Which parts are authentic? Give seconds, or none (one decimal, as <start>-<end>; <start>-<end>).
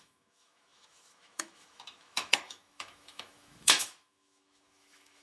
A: none